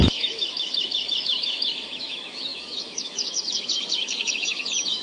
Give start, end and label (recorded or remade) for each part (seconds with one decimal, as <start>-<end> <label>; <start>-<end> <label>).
0.0-5.0 remade